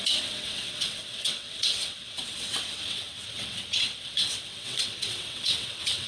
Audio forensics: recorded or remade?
remade